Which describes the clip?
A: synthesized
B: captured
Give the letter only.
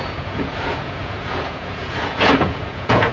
A